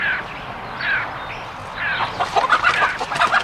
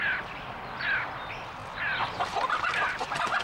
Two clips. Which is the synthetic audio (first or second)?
second